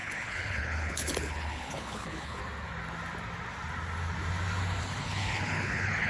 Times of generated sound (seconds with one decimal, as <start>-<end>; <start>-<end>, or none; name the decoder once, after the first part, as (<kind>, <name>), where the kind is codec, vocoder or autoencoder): 0.0-2.4 (codec, HILCodec); 4.8-6.1